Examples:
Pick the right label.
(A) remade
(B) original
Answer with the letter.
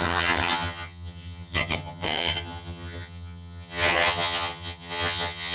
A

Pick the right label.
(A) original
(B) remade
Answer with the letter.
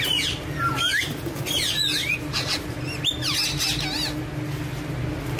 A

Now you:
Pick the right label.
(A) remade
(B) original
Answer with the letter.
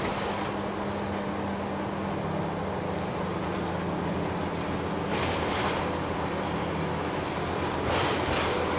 B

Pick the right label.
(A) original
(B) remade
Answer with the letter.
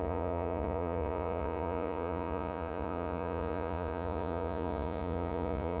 B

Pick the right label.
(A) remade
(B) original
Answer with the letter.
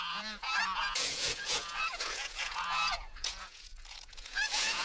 A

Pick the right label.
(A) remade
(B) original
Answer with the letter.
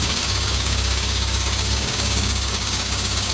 A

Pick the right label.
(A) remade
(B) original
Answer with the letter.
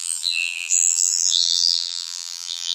A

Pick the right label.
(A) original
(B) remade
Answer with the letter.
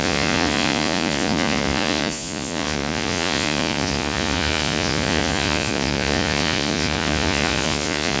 B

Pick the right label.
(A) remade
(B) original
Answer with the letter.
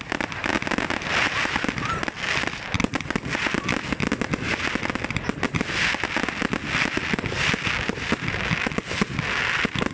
B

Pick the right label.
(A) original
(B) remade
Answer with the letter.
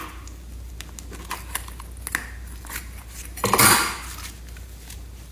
A